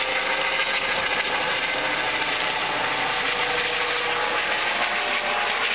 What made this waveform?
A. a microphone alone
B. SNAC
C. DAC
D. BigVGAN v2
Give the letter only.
A